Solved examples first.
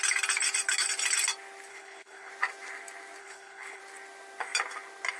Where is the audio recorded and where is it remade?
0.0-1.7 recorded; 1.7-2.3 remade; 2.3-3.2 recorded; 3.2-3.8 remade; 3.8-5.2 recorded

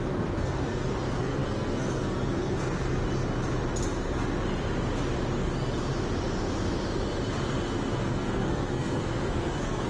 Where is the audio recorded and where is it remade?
0.0-3.0 remade; 3.0-7.9 recorded; 7.9-9.9 remade

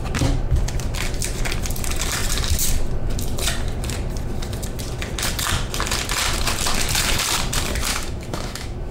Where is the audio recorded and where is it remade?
0.0-7.9 recorded; 7.9-8.9 remade